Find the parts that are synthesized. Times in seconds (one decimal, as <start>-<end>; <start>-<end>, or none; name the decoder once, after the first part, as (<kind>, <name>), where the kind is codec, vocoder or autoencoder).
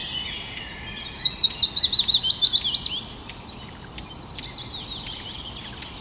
1.6-2.2 (vocoder, BigVGAN v2); 3.2-5.5